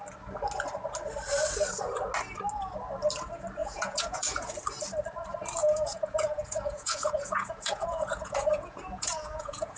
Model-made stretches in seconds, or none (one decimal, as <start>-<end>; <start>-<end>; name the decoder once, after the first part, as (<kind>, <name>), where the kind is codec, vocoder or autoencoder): 3.6-4.5 (vocoder, Vocos); 5.6-9.8